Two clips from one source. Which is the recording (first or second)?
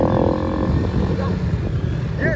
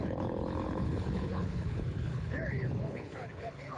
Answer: first